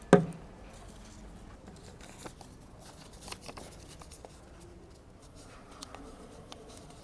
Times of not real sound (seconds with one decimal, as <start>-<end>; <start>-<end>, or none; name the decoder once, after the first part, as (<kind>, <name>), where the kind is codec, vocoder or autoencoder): 5.2-7.0 (vocoder, Vocos)